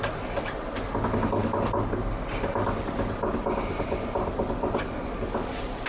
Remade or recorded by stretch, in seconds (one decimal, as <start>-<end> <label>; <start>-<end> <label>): 0.0-5.9 recorded